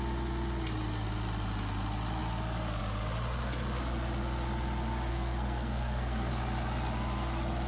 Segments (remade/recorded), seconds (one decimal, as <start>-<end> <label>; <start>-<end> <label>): 0.0-5.1 recorded; 5.1-6.3 remade; 6.3-7.7 recorded